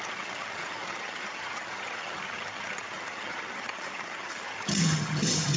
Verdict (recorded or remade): remade